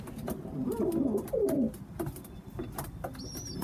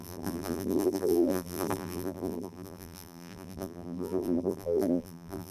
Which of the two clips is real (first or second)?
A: first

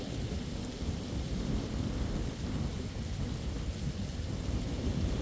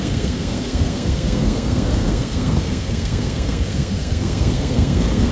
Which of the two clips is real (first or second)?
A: first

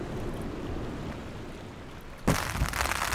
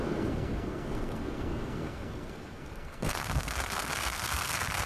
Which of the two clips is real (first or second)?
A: first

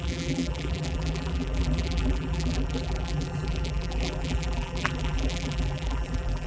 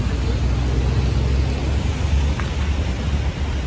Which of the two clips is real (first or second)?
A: second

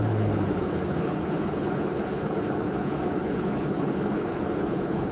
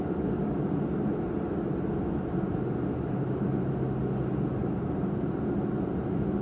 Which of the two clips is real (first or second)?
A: second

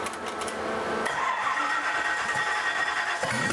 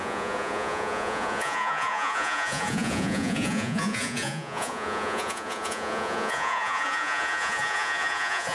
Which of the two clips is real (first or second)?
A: first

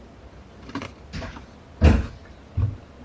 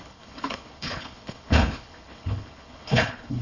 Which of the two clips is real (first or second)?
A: first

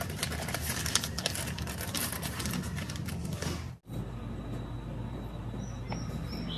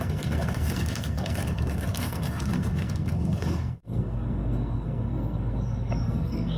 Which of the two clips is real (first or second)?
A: first